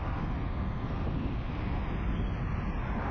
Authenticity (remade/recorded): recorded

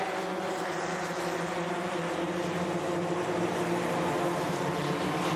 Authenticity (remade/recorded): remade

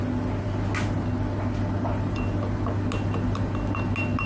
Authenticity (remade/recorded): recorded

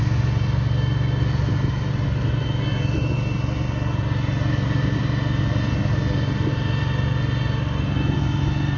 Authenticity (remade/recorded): recorded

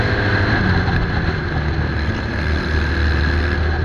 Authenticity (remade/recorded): recorded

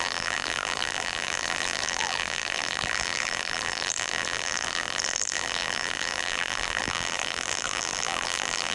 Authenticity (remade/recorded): remade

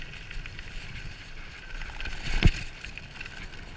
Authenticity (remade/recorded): recorded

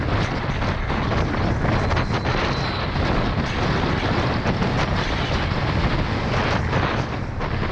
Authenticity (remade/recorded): recorded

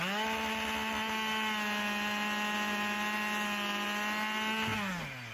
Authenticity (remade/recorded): recorded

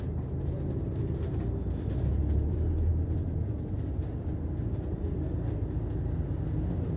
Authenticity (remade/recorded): recorded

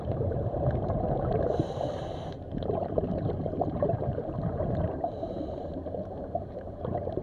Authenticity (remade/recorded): remade